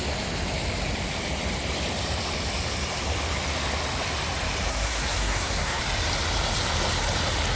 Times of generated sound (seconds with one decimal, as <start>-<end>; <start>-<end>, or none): 4.7-5.8